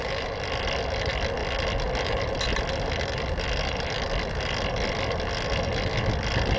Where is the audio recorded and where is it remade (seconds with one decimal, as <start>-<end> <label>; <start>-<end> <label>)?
0.0-6.6 recorded